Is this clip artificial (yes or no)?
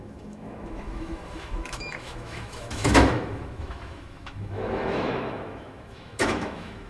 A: yes